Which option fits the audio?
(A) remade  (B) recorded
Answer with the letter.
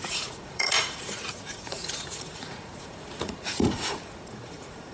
A